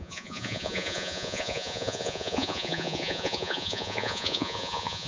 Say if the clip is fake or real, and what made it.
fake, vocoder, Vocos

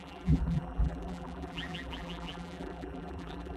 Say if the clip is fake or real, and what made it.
fake, vocoder, BigVGAN v2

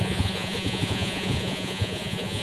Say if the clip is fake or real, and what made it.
fake, vocoder, Vocos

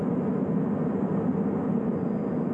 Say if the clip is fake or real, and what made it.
real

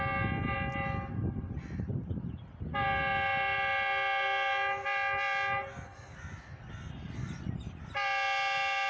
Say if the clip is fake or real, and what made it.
real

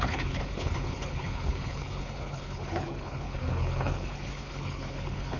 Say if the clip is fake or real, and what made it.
fake, codec, HILCodec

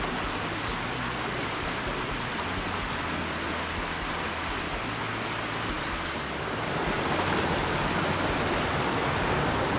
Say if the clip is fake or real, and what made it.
real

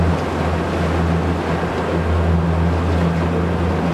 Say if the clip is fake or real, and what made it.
real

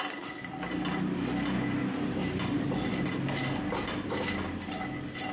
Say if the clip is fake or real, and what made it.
real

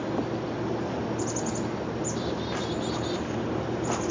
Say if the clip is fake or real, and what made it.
real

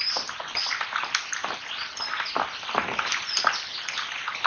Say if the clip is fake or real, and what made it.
real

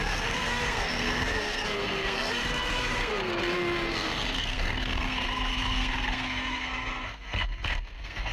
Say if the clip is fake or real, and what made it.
fake, codec, SNAC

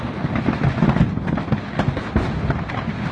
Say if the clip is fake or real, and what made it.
real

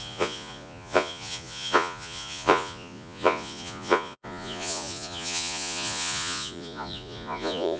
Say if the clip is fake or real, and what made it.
fake, vocoder, Vocos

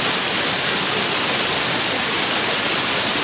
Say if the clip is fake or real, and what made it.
real